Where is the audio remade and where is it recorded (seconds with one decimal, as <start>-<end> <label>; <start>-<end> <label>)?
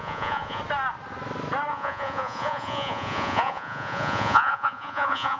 0.0-0.6 remade; 0.6-1.7 recorded; 1.7-5.4 remade